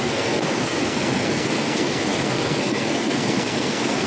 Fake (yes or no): yes